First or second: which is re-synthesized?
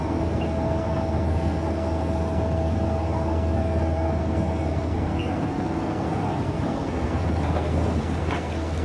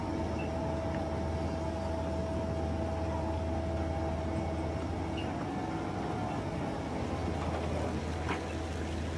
first